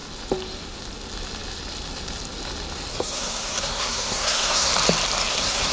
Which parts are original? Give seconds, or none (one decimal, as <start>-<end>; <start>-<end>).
0.0-2.9; 4.7-5.3